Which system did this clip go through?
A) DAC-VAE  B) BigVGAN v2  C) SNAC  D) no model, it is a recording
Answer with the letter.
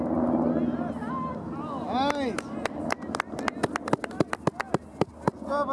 D